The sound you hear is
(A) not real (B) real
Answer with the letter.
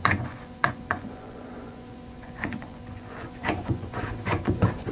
A